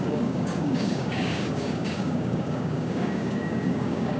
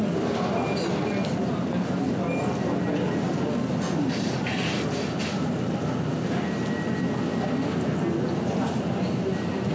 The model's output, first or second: first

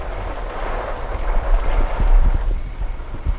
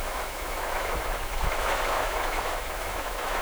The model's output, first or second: second